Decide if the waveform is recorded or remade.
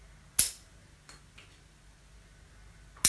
recorded